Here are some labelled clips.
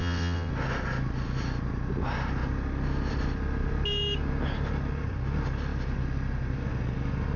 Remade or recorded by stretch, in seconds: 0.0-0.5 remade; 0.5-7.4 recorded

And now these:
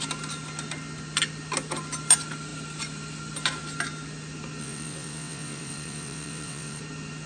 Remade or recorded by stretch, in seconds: 0.0-4.6 recorded; 4.6-6.8 remade; 6.8-7.3 recorded